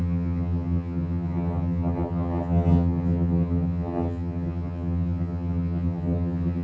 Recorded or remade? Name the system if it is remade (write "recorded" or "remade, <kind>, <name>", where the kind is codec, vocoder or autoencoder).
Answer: remade, vocoder, HiFi-GAN